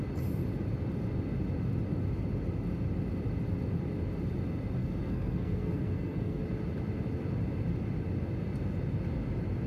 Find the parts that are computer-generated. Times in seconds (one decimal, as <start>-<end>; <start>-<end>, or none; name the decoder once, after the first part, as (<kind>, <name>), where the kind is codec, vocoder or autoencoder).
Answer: 4.8-6.4 (codec, SNAC)